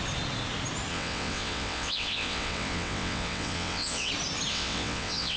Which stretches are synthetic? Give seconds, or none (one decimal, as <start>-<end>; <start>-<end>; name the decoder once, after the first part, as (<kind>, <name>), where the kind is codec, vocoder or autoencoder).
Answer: 0.9-4.1 (vocoder, WaveNeXt); 4.5-5.4

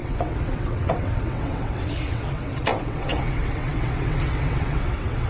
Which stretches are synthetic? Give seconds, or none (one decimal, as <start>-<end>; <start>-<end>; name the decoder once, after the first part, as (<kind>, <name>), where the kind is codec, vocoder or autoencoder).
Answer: 0.0-5.3 (vocoder, WaveNeXt)